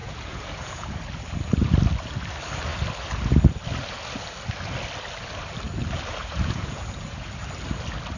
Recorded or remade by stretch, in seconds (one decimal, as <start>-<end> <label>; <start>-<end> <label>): 0.0-1.0 remade; 1.0-6.2 recorded; 6.2-7.3 remade; 7.3-8.2 recorded